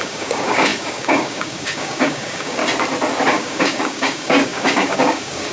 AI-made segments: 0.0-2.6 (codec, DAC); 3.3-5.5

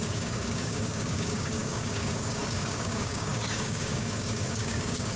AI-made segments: 0.0-5.2 (codec, DAC)

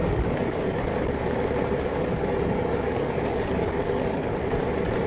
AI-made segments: 0.0-0.9 (codec, DAC); 1.8-4.3